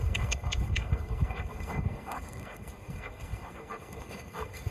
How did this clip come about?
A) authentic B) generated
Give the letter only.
B